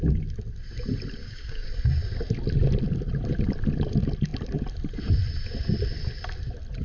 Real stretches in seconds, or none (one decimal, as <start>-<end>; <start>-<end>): 0.0-1.2; 1.7-6.8